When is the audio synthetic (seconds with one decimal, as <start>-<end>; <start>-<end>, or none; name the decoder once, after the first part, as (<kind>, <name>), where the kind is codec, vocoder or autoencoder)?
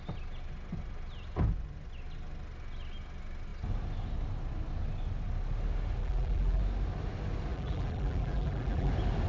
6.0-6.6 (vocoder, BigVGAN v2); 7.5-8.9